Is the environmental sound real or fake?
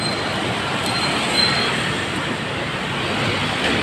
real